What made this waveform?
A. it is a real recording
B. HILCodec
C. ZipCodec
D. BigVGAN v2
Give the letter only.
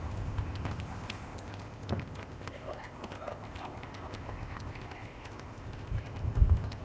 C